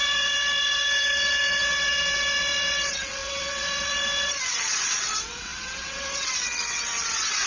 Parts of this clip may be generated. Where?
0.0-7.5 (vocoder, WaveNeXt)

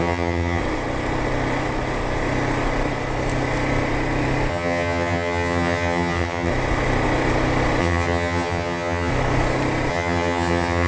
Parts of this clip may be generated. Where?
0.0-0.6 (vocoder, HiFi-GAN); 4.5-6.5; 7.8-9.1; 9.9-10.9

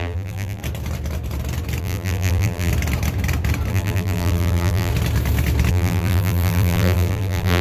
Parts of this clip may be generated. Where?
0.0-0.6 (vocoder, BigVGAN v2); 1.8-2.7; 3.7-4.9; 5.7-7.6

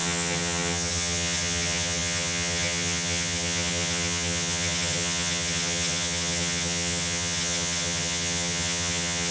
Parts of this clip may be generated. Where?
0.0-9.3 (vocoder, HiFi-GAN)

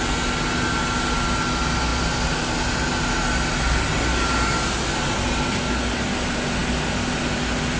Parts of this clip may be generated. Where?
none

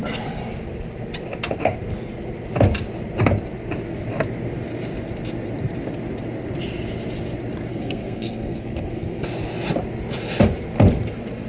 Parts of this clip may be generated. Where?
7.7-9.2 (codec, SNAC)

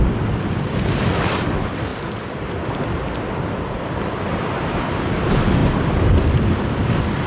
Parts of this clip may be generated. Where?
0.0-1.9 (vocoder, BigVGAN v2); 4.5-5.6